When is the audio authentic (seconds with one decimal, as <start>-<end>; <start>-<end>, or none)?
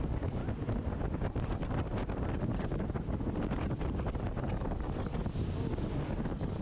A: 0.4-4.4; 5.2-6.1